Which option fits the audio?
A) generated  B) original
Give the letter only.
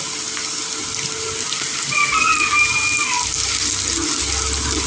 B